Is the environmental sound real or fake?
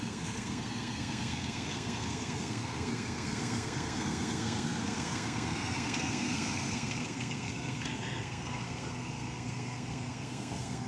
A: fake